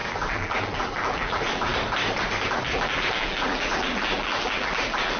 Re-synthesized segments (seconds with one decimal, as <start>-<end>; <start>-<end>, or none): 0.0-1.7; 2.5-5.2